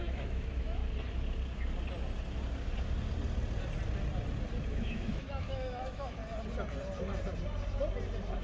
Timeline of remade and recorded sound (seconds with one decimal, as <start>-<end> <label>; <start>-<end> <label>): 0.0-0.8 remade; 0.8-4.7 recorded; 4.7-6.2 remade; 6.2-8.4 recorded